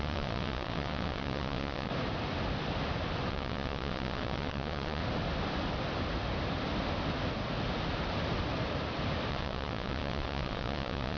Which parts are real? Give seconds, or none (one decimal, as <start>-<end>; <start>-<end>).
1.9-3.3; 5.0-9.3